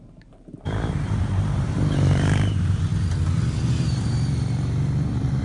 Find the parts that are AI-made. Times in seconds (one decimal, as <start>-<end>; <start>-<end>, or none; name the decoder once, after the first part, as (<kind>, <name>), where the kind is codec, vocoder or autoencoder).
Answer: 0.0-2.9 (vocoder, BigVGAN v2); 3.7-5.4